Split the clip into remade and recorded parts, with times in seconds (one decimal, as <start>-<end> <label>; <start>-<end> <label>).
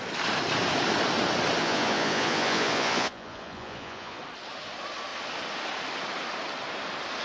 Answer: 0.0-1.6 recorded; 1.6-4.2 remade; 4.2-7.2 recorded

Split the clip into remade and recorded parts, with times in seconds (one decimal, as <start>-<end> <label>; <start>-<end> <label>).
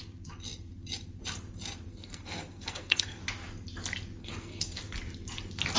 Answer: 0.0-1.9 recorded; 1.9-3.2 remade; 3.2-4.2 recorded; 4.2-4.8 remade; 4.8-5.8 recorded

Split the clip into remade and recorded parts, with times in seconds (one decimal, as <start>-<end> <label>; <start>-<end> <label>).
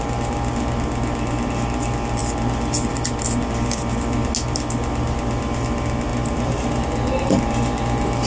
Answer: 0.0-6.1 recorded; 6.1-6.8 remade; 6.8-8.3 recorded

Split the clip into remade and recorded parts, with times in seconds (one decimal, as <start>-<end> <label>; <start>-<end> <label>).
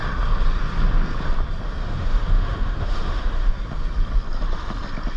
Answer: 0.0-1.8 recorded; 1.8-3.5 remade; 3.5-5.2 recorded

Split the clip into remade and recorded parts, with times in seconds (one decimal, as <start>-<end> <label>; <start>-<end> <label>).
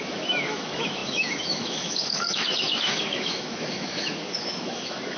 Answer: 0.0-5.2 remade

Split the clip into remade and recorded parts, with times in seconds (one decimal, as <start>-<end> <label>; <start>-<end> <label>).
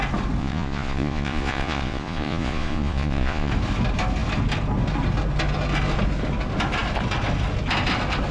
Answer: 0.0-0.4 recorded; 0.4-3.5 remade; 3.5-8.3 recorded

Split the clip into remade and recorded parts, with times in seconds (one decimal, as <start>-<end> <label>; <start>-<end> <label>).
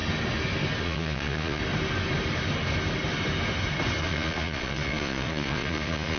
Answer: 0.0-0.8 recorded; 0.8-1.6 remade; 1.6-4.0 recorded; 4.0-6.2 remade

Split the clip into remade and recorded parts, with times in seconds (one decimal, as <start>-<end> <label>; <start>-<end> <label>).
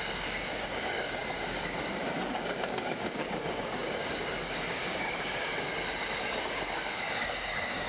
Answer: 0.0-5.7 remade; 5.7-6.5 recorded; 6.5-7.9 remade